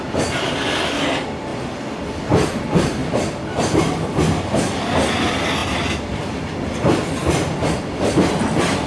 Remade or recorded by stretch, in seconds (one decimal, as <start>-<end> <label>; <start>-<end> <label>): 0.0-8.9 recorded